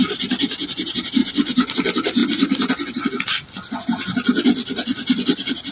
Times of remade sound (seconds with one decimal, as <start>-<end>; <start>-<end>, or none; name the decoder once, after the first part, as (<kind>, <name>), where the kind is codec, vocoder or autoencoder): 1.2-1.7 (vocoder, Vocos)